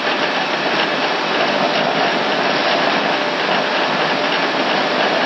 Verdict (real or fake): real